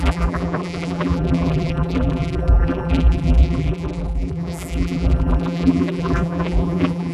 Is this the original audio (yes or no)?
no